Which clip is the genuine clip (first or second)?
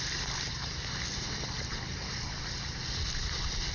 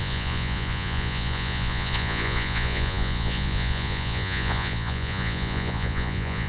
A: first